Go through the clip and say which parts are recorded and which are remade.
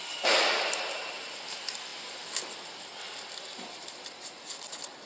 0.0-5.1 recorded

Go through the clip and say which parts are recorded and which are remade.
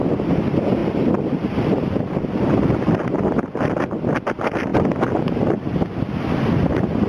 0.0-0.8 recorded; 0.8-4.2 remade; 4.2-7.1 recorded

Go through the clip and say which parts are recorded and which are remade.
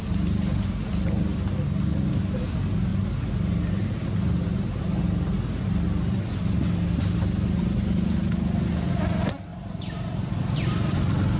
0.0-9.5 recorded; 9.5-11.0 remade; 11.0-11.4 recorded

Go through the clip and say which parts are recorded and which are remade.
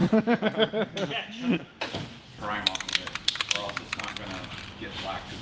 0.0-1.8 remade; 1.8-5.4 recorded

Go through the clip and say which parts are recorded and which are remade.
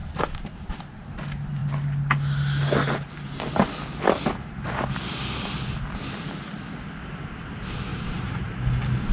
0.0-0.9 remade; 0.9-7.9 recorded; 7.9-8.5 remade; 8.5-9.1 recorded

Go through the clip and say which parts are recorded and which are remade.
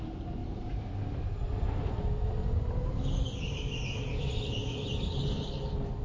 0.0-0.4 recorded; 0.4-1.3 remade; 1.3-6.0 recorded